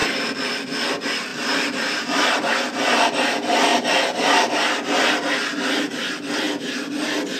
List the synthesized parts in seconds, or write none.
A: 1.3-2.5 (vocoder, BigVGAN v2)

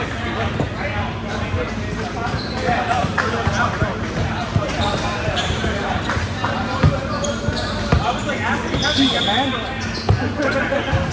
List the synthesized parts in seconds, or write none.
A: 3.0-3.5 (vocoder, BigVGAN v2); 4.4-9.2

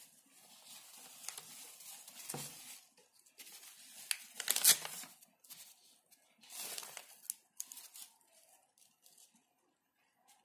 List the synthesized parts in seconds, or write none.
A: none

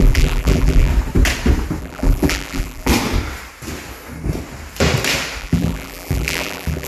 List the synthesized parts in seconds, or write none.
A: 0.0-0.9 (vocoder, BigVGAN v2); 1.8-2.9; 5.4-6.9

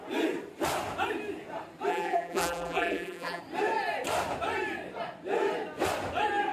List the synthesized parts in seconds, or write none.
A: 1.9-3.4 (vocoder, BigVGAN v2)